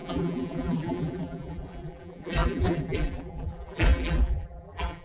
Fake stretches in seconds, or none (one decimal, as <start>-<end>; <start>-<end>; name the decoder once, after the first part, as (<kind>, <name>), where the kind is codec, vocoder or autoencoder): 0.0-5.0 (vocoder, BigVGAN v2)